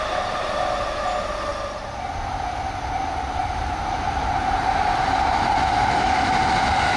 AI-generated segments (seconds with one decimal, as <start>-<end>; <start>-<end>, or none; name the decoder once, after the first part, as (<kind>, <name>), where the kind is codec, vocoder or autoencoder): none